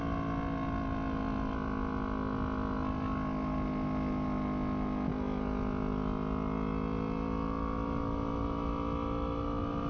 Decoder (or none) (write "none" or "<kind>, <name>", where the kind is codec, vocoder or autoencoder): none